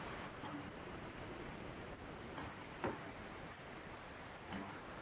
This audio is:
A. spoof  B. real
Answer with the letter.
A